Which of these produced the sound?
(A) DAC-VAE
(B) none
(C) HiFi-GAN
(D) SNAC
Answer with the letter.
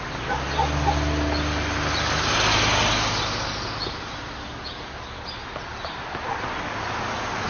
B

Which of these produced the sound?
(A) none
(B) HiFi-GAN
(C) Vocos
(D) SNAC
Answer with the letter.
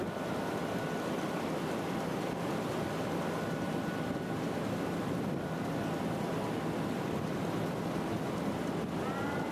A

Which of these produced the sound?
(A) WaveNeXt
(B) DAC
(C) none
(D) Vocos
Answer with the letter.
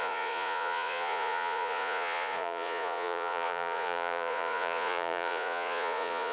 D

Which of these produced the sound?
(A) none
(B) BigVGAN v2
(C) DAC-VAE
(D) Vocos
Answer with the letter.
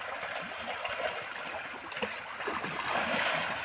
A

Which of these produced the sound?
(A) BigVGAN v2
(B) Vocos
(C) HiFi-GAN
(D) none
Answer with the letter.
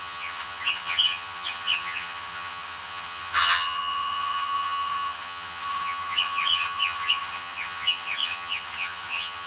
C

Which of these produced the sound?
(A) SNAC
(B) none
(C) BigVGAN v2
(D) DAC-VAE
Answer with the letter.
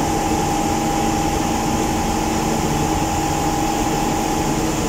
B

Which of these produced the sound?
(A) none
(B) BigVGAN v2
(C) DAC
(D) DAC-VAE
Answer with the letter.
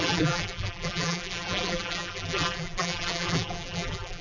B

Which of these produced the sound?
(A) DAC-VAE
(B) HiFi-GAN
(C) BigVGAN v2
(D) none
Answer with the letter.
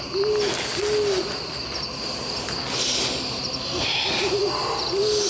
D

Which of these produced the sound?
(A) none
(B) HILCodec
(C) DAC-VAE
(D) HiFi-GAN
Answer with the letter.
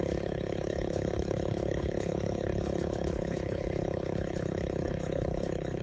B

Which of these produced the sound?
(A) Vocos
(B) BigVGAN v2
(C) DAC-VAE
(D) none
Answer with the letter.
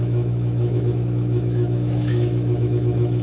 C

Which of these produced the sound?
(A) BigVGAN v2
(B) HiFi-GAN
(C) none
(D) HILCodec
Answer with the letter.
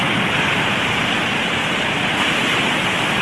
C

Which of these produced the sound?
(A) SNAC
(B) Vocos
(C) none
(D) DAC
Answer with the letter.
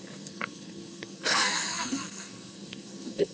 A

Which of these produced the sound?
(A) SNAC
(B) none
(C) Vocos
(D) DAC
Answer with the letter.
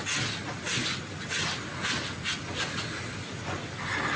B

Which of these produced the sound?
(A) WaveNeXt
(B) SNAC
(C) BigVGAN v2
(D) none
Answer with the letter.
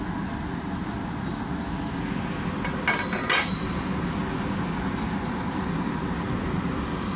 D